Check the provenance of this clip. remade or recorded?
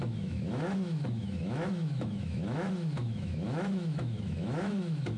remade